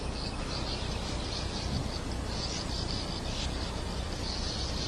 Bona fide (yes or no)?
yes